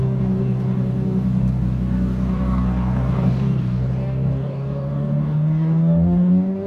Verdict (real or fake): fake